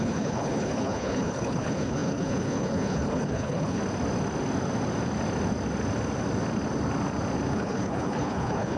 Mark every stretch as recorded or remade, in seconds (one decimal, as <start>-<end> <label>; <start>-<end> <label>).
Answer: 0.0-3.8 remade; 3.8-7.5 recorded; 7.5-8.8 remade